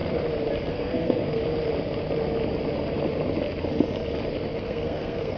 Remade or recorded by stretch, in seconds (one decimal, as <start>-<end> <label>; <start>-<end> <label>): 0.0-0.7 recorded; 0.7-1.4 remade; 1.4-4.6 recorded; 4.6-5.4 remade